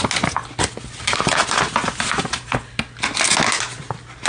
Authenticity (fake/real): real